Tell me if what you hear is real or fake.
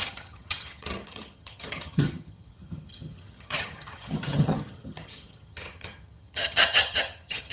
fake